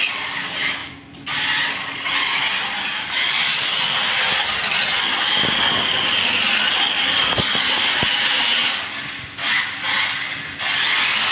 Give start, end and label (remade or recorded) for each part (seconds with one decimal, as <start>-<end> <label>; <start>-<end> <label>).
0.0-0.8 recorded; 0.8-1.4 remade; 1.4-11.3 recorded